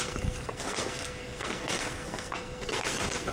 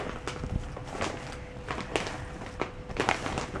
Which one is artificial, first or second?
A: first